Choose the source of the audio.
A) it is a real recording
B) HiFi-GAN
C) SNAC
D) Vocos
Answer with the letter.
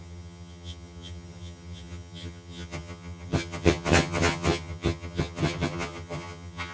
B